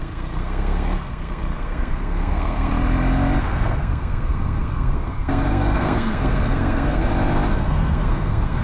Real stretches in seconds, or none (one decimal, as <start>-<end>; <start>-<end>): 2.7-3.4; 7.1-7.6